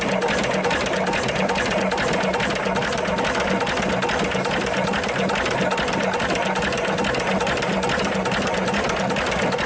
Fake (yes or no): no